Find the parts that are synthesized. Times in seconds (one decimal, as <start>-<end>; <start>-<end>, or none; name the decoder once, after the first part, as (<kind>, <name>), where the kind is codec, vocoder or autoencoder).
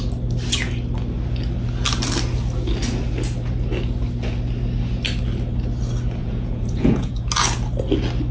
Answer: 6.2-7.2 (vocoder, Vocos)